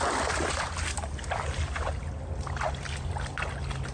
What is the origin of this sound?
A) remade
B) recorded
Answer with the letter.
B